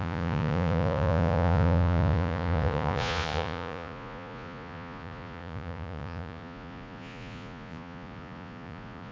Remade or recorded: remade